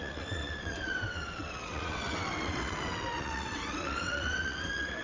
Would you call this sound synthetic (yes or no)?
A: yes